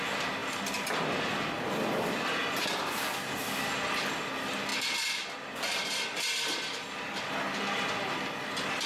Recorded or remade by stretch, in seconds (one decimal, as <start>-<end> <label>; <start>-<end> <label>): 0.0-8.9 recorded